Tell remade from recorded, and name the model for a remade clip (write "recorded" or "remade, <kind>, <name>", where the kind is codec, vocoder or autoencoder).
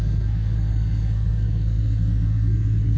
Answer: remade, codec, SNAC